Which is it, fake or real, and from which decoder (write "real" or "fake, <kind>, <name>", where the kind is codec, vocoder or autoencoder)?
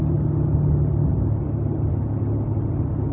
real